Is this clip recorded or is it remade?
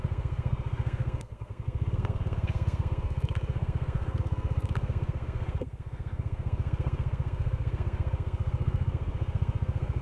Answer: remade